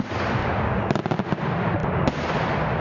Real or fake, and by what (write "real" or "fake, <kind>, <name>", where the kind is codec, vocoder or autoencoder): real